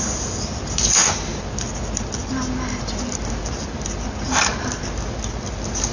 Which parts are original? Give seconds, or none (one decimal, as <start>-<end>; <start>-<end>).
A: 0.0-5.9